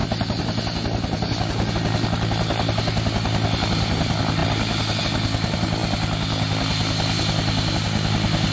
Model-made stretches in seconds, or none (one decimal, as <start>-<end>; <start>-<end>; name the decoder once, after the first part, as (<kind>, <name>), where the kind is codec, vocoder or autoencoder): none